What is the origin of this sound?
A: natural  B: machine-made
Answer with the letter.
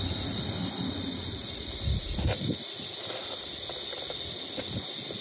A